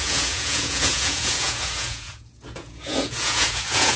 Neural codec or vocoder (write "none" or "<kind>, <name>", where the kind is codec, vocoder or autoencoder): vocoder, Vocos